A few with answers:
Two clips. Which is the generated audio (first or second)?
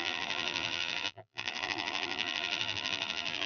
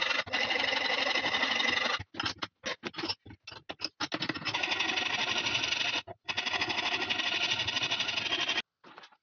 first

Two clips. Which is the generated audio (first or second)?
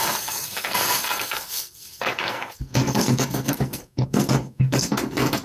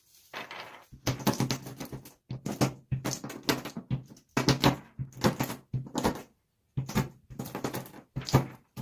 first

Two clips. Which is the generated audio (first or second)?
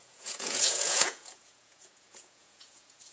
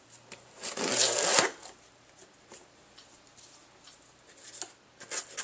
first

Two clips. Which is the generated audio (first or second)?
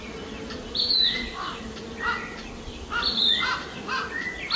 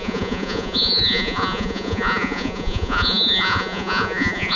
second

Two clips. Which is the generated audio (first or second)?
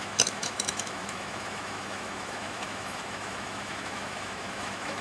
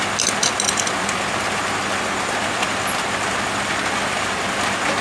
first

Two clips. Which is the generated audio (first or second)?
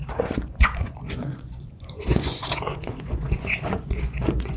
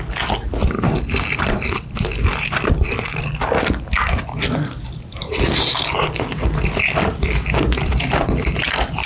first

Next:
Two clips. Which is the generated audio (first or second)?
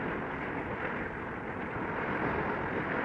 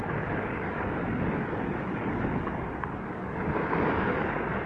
second